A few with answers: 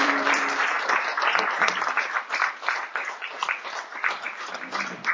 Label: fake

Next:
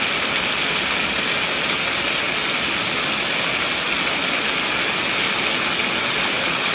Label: real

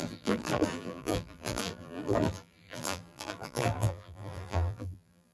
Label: fake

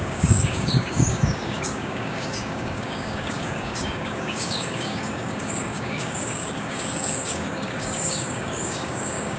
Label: fake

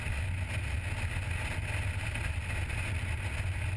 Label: real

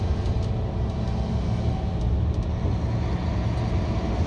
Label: real